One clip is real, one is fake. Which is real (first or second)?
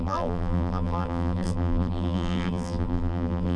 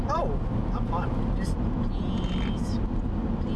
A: second